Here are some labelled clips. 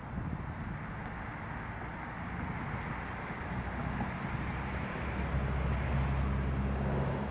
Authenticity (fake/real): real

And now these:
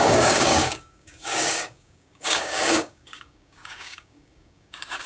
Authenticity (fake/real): fake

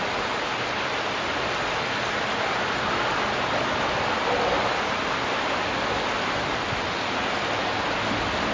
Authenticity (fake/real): real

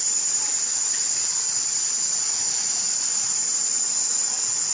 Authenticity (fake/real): real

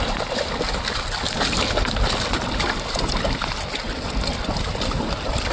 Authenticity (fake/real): real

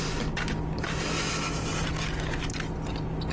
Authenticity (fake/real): real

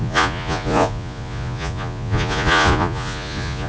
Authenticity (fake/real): fake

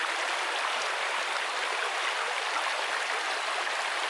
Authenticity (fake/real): real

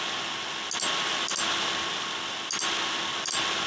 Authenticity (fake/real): real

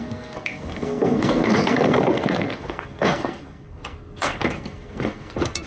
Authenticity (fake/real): fake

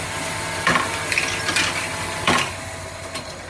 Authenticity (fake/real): real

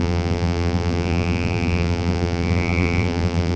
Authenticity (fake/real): fake